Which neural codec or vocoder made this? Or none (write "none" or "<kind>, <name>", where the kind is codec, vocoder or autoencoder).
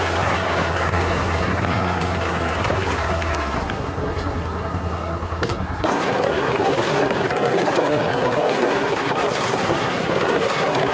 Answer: codec, SNAC